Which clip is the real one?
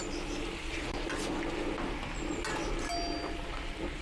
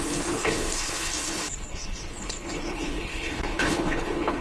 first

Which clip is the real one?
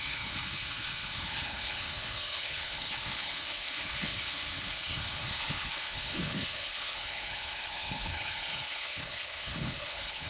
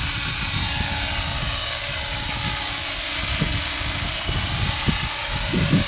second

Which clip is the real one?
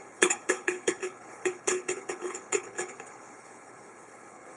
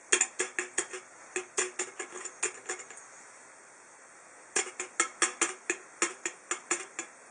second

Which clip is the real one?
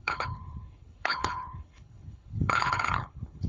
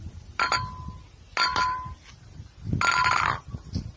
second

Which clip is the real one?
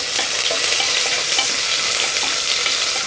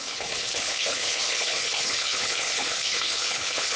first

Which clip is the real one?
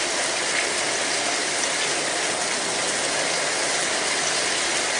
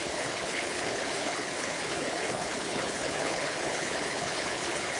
first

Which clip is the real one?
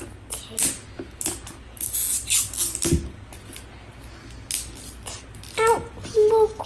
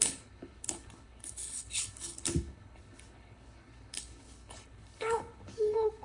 first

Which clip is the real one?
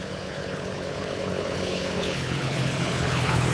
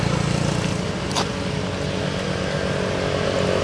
second